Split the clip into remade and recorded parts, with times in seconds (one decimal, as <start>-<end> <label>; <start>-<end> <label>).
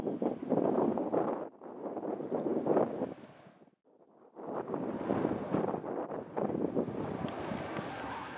0.0-7.9 recorded; 7.9-8.4 remade